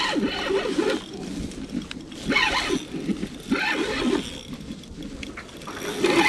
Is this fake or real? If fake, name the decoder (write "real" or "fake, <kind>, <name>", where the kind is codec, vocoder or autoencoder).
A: real